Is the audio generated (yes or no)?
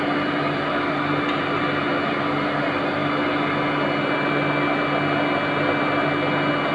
no